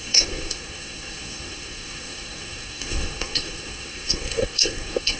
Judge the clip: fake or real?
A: fake